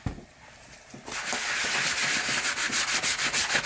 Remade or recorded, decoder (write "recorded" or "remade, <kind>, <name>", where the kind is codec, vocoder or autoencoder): recorded